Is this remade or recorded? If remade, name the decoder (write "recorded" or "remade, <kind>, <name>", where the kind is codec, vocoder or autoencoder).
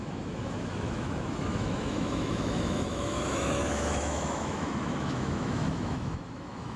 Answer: remade, autoencoder, DAC-VAE